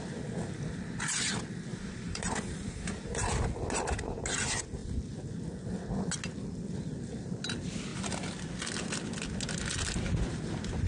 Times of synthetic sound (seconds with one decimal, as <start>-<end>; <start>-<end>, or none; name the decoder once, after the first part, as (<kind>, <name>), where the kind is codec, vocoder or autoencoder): 1.7-3.3 (vocoder, BigVGAN v2)